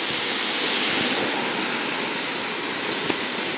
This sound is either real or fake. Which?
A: real